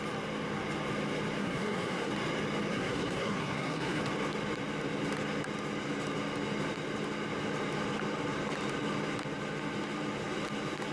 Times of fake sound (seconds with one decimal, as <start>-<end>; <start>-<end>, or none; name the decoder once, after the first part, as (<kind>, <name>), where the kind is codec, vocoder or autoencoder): 1.4-2.1 (codec, SNAC); 2.7-4.0